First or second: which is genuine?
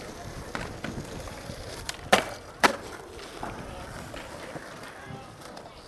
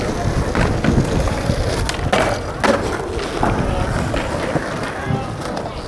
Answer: second